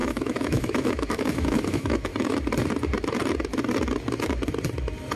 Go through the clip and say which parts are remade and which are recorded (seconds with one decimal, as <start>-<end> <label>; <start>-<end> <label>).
0.0-2.1 remade; 2.1-5.2 recorded